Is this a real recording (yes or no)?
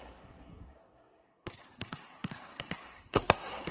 no